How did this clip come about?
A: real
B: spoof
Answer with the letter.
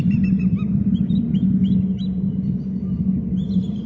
A